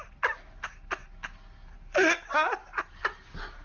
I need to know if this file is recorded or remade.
recorded